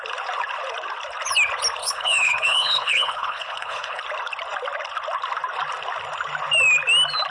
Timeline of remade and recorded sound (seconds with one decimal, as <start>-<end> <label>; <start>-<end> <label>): 0.0-1.8 recorded; 1.8-4.0 remade; 4.0-7.3 recorded